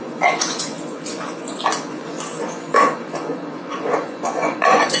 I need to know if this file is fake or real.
fake